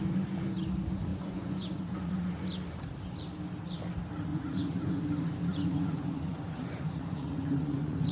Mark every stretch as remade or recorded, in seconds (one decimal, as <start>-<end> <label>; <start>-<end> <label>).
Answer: 0.0-1.1 recorded; 1.1-2.1 remade; 2.1-4.3 recorded; 4.3-5.0 remade; 5.0-5.5 recorded; 5.5-8.1 remade